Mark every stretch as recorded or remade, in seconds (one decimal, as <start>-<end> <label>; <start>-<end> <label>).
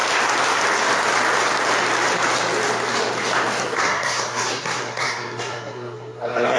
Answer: 0.0-3.6 recorded; 3.6-6.6 remade